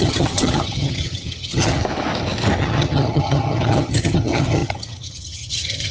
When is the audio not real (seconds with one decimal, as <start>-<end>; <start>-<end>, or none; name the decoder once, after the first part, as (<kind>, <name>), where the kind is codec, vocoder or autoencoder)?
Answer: 0.0-1.8 (vocoder, HiFi-GAN); 2.6-5.9